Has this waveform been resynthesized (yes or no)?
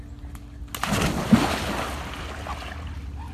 no